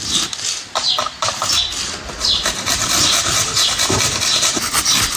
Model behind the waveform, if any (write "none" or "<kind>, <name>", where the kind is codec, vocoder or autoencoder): none